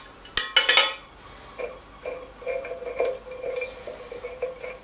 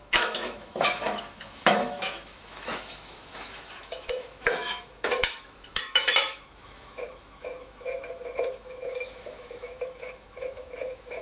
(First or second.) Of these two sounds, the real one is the first